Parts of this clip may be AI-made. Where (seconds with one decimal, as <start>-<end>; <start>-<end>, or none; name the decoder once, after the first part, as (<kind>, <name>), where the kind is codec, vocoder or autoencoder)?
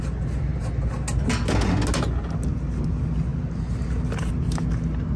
none